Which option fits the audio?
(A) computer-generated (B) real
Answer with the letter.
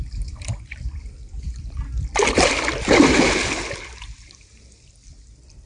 B